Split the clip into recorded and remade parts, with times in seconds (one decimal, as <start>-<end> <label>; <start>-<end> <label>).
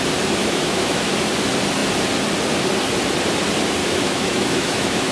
0.0-0.4 recorded; 0.4-1.1 remade; 1.1-3.8 recorded; 3.8-5.1 remade